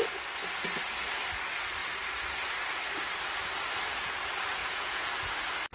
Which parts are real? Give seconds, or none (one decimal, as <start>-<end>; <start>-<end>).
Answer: 0.0-4.6; 5.1-5.7

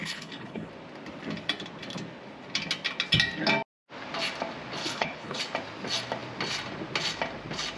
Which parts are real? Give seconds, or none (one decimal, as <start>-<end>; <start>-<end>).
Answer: 0.7-4.8; 5.4-7.8

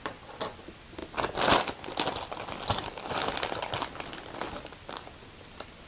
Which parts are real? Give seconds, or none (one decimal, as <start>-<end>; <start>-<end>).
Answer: 0.0-5.9

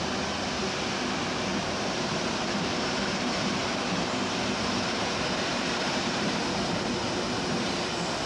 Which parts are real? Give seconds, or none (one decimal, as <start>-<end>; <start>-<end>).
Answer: 0.0-1.5; 3.1-3.6; 5.0-5.5; 6.4-8.3

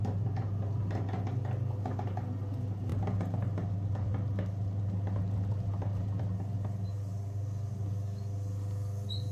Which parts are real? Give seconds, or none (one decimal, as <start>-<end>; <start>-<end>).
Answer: 0.0-9.3

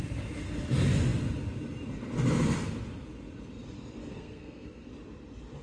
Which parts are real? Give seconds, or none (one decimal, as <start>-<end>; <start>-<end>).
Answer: 0.0-4.0; 4.9-5.6

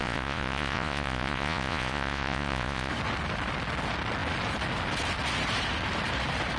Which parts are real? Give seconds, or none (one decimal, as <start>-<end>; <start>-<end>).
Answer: 2.9-6.6